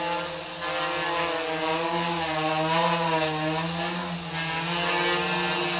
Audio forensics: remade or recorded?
recorded